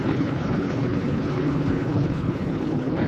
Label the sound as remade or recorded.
remade